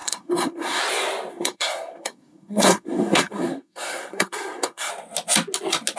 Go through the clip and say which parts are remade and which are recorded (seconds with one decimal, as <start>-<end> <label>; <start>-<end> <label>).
0.0-0.8 remade; 0.8-1.3 recorded; 1.3-4.9 remade; 4.9-6.0 recorded